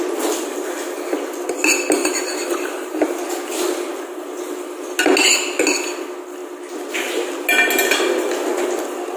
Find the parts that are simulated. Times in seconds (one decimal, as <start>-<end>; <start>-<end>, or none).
2.0-2.9